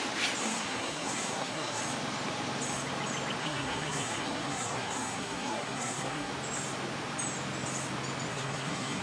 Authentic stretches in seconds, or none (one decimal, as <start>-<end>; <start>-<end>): 0.0-0.4; 1.8-3.4; 6.3-8.3